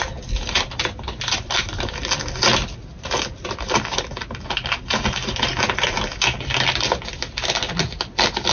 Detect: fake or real real